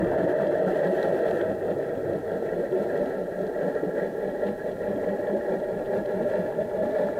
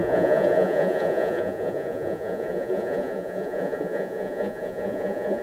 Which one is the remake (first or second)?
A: second